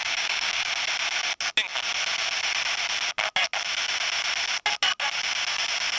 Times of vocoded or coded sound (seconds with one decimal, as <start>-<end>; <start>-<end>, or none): 0.0-0.7